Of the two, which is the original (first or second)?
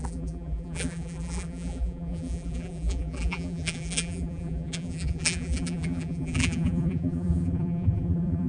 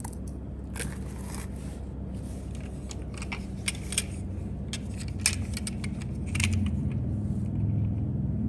second